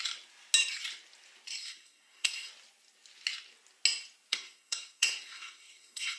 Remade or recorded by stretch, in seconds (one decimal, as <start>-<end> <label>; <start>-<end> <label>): 0.0-1.6 recorded; 1.6-2.5 remade; 2.5-4.3 recorded; 4.3-6.2 remade